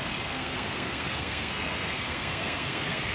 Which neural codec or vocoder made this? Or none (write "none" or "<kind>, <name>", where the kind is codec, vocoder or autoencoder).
codec, SNAC